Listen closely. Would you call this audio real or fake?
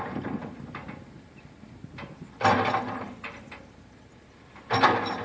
real